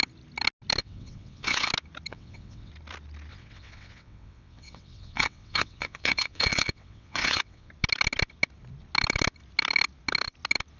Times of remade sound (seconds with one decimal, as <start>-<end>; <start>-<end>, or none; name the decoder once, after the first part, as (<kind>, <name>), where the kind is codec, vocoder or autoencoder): 0.8-1.7 (vocoder, WaveNeXt); 2.1-2.7; 3.3-7.7